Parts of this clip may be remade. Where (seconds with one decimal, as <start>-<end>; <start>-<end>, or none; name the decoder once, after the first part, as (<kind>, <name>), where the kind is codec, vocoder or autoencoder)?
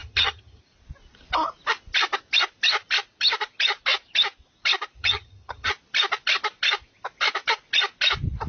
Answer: 0.0-0.6 (vocoder, HiFi-GAN); 5.0-5.7